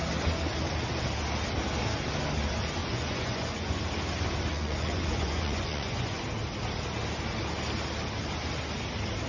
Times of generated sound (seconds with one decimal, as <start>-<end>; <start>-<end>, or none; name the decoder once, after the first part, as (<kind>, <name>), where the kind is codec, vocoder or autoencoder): 2.8-3.8 (vocoder, Vocos); 4.5-6.2